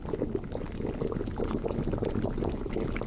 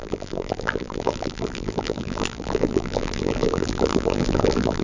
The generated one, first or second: second